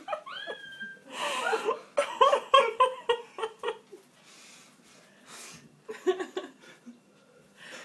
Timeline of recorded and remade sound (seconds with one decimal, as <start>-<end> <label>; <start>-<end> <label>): 0.0-7.8 recorded